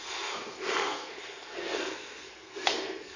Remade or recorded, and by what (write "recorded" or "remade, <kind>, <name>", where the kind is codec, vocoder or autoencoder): remade, codec, SNAC